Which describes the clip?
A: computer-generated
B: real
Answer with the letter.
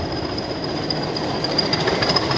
A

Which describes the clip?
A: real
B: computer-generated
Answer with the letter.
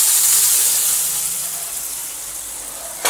B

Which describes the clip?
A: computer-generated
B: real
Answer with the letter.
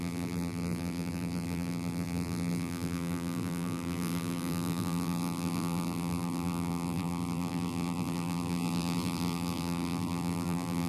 A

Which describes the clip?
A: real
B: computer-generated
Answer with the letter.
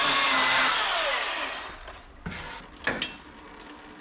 A